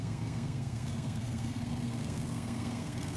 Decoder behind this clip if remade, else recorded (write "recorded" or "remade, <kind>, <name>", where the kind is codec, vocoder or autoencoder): remade, codec, SNAC